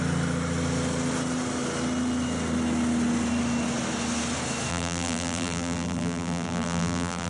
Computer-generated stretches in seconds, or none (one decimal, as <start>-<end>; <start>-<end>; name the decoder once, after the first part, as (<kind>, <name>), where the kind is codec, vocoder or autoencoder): 4.7-7.3 (vocoder, BigVGAN v2)